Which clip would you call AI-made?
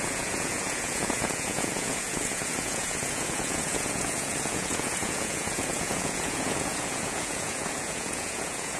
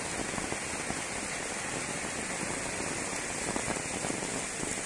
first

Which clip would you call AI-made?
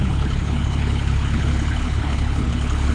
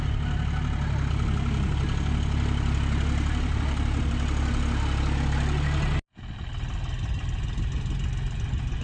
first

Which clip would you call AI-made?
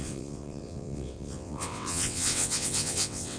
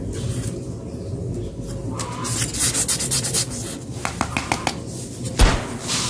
first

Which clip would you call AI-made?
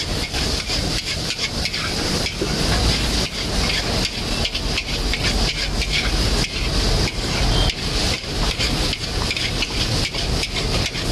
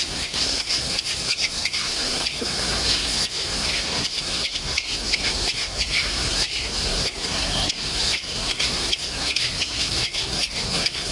second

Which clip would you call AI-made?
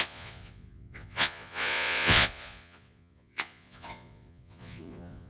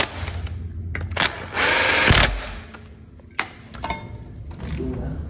first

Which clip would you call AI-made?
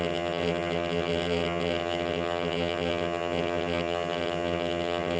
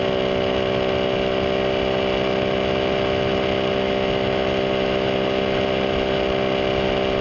first